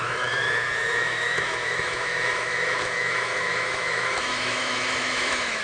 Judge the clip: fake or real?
fake